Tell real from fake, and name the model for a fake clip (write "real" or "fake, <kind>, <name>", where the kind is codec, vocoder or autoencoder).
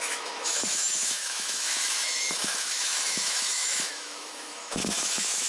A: fake, autoencoder, DAC-VAE